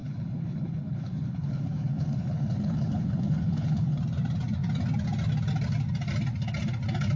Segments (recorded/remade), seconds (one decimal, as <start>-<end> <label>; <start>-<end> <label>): 0.0-4.0 remade; 4.0-7.2 recorded